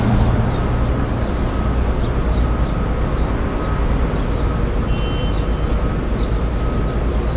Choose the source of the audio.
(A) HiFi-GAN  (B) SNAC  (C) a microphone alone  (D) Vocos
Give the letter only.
C